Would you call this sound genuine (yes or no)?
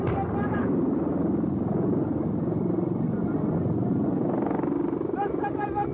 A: yes